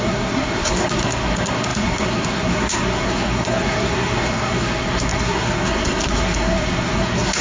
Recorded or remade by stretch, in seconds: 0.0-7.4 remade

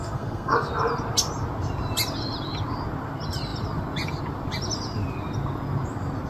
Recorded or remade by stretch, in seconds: 0.0-0.7 remade; 0.7-6.3 recorded

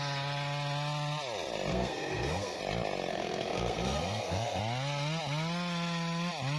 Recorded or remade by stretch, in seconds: 0.0-1.7 recorded; 1.7-2.6 remade; 2.6-3.1 recorded; 3.1-4.6 remade; 4.6-6.6 recorded

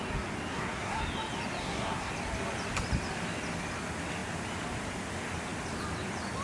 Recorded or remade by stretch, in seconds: 0.0-0.5 recorded; 0.5-1.0 remade; 1.0-1.6 recorded; 1.6-2.1 remade; 2.1-6.4 recorded

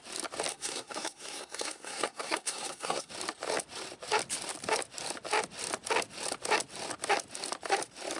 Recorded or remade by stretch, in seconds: 0.0-0.5 recorded; 0.5-3.1 remade; 3.1-8.2 recorded